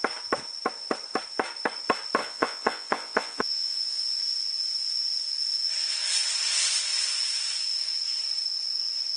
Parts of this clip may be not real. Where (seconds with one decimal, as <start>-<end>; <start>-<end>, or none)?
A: 2.2-4.2